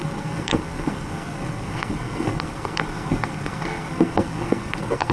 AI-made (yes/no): yes